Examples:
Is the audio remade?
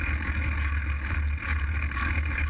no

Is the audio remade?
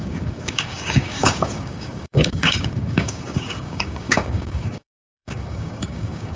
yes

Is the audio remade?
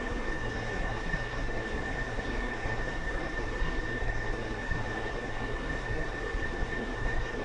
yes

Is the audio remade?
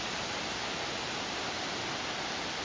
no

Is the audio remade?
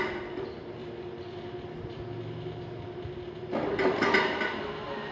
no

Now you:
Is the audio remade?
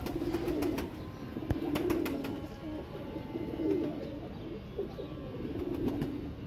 no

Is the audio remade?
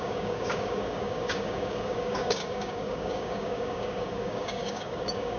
yes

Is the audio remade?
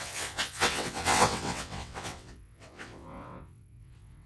yes